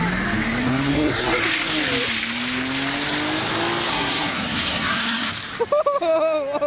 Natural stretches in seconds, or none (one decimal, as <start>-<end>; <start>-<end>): 0.0-0.6; 1.4-3.9; 5.3-6.7